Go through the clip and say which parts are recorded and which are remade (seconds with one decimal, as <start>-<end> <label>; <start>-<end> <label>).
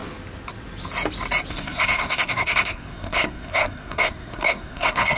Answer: 0.0-1.5 recorded; 1.5-5.2 remade